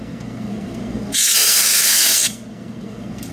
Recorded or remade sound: remade